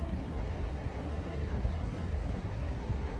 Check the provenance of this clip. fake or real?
fake